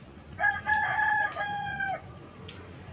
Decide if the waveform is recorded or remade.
remade